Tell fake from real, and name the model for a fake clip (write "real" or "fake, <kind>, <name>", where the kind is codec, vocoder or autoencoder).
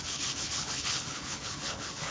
fake, codec, HILCodec